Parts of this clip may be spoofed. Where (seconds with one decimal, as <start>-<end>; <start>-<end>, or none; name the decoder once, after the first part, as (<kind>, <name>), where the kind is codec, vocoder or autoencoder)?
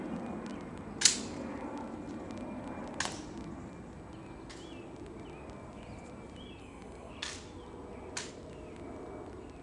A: 6.6-7.1 (codec, SNAC)